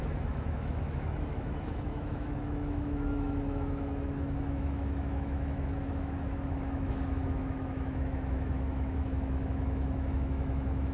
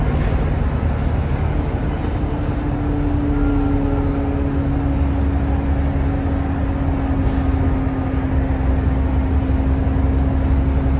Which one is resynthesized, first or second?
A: first